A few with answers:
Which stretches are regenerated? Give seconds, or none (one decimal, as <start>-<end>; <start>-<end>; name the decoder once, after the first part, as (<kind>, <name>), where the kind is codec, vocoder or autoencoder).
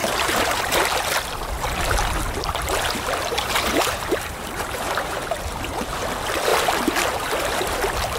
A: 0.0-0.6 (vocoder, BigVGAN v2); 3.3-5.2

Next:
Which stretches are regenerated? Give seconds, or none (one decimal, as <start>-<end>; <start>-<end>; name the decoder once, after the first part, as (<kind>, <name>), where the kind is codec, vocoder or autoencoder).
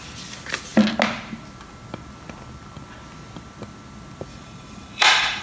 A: 4.3-5.4 (vocoder, BigVGAN v2)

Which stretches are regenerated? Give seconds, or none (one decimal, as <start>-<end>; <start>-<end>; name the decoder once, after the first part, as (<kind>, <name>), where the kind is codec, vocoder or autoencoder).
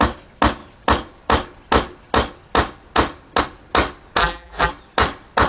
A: 4.2-4.7 (vocoder, BigVGAN v2)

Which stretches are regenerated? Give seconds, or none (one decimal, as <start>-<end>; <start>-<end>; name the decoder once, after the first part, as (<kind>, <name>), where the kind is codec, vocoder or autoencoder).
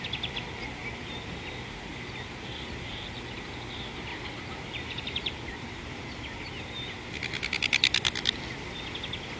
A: 4.1-5.8 (vocoder, BigVGAN v2)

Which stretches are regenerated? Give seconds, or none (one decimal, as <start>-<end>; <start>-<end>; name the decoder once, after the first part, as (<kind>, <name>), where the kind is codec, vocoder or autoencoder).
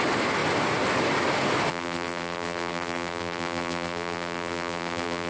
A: 1.7-5.3 (vocoder, BigVGAN v2)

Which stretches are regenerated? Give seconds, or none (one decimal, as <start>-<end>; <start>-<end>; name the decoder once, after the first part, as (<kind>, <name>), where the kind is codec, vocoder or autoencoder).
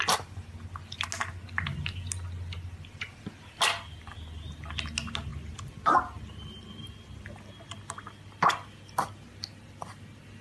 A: none